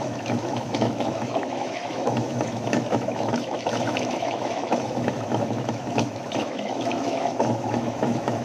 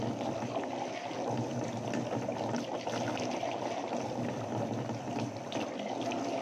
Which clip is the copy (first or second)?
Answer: first